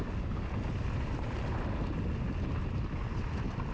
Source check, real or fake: real